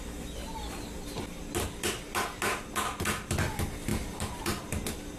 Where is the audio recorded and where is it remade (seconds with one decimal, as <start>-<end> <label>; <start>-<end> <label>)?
0.0-3.9 recorded; 3.9-5.2 remade

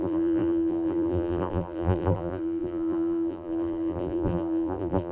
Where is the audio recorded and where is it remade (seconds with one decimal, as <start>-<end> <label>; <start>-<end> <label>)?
0.0-5.1 remade

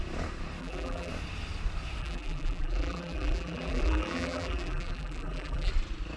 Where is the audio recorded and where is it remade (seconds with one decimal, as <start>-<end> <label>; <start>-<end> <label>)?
0.0-0.6 recorded; 0.6-1.1 remade; 1.1-2.0 recorded; 2.0-5.7 remade; 5.7-6.2 recorded

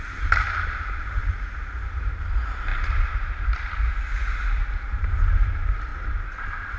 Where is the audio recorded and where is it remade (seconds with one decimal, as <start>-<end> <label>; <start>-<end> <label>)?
0.0-1.2 remade; 1.2-2.0 recorded; 2.0-5.9 remade; 5.9-6.8 recorded

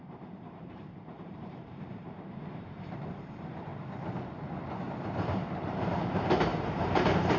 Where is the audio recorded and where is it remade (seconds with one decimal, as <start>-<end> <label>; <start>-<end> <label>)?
0.0-3.7 remade; 3.7-5.6 recorded; 5.6-7.4 remade

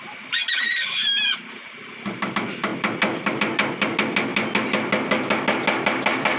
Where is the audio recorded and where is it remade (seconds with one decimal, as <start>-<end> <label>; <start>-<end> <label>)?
0.0-0.7 recorded; 0.7-1.9 remade; 1.9-6.4 recorded

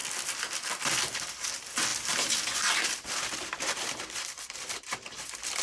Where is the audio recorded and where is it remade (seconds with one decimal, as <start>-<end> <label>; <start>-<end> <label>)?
0.0-1.9 recorded; 1.9-5.6 remade